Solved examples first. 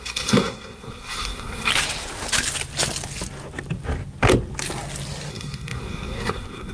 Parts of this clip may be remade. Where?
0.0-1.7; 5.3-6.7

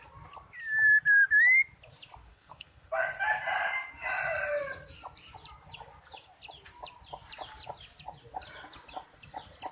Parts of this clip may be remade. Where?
2.3-3.2

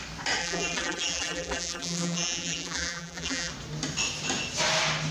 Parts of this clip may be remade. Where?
0.4-3.5

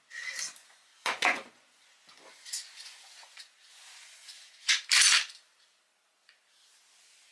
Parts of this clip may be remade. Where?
0.6-4.7

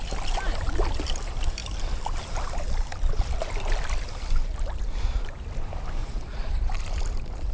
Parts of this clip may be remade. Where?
6.0-6.7

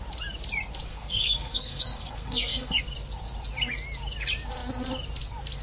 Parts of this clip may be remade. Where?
0.9-2.8

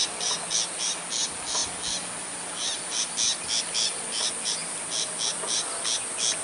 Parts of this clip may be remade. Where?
none